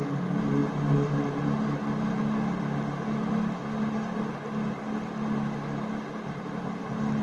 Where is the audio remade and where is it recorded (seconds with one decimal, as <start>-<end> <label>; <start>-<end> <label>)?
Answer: 0.0-7.2 recorded

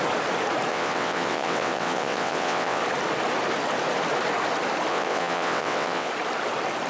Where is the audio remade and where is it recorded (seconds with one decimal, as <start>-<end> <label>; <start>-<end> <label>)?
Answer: 0.0-0.7 recorded; 0.7-2.8 remade; 2.8-4.9 recorded; 4.9-6.1 remade; 6.1-6.9 recorded

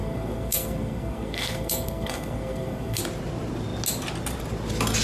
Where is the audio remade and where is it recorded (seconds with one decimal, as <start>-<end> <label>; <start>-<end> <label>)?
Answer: 0.0-3.0 remade; 3.0-5.0 recorded

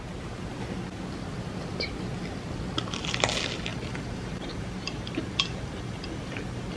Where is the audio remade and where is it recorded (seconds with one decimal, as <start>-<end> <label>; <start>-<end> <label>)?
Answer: 0.0-3.7 recorded; 3.7-6.8 remade

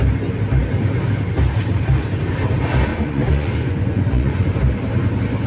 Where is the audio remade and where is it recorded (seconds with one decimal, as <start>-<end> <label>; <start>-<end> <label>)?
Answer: 0.0-2.9 recorded; 2.9-4.6 remade; 4.6-5.5 recorded